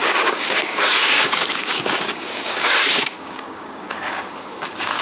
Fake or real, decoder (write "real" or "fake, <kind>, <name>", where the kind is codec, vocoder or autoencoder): fake, codec, DAC